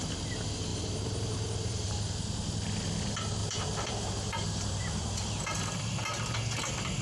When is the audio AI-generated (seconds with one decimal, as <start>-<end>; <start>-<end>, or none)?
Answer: 0.7-1.9; 3.4-5.4